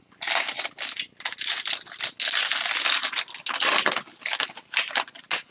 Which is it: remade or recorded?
recorded